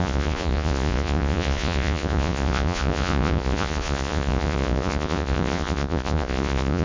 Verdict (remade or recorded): remade